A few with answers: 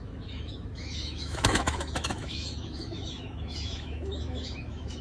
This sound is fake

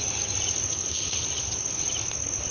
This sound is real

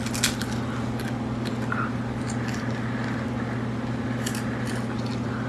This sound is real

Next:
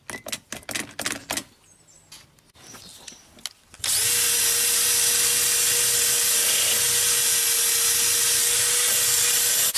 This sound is real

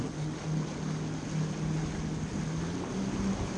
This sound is real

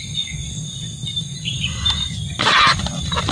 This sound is real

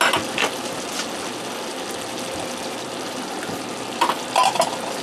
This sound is real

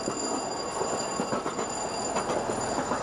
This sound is real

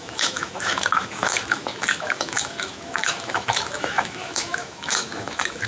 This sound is fake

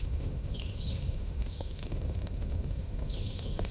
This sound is fake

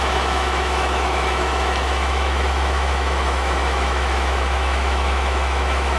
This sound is fake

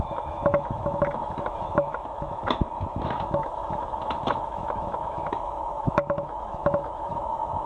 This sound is fake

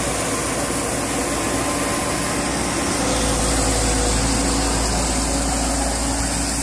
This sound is real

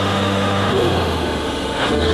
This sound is fake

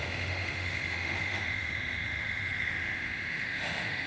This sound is fake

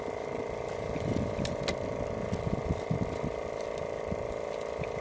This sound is real